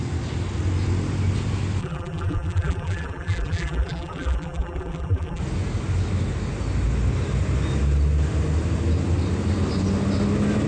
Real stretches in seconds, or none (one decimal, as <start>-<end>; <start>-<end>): 0.0-1.8; 5.4-10.7